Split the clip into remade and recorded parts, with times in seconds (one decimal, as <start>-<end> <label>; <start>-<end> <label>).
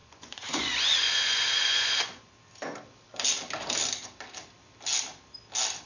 0.0-2.3 remade; 2.3-5.8 recorded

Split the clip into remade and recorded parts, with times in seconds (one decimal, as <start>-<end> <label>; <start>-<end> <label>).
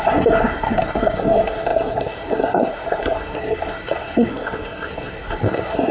0.0-5.9 remade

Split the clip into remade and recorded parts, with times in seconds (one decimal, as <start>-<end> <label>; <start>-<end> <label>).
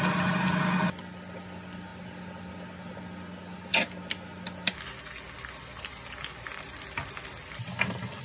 0.0-8.2 recorded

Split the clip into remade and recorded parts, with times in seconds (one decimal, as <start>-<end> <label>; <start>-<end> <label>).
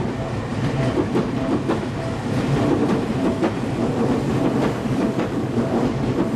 0.0-4.8 recorded; 4.8-5.8 remade; 5.8-6.4 recorded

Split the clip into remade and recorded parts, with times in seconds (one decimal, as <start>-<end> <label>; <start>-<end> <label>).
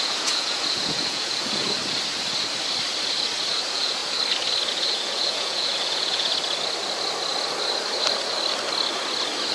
0.0-1.8 remade; 1.8-3.6 recorded; 3.6-4.0 remade; 4.0-4.7 recorded; 4.7-6.3 remade; 6.3-9.5 recorded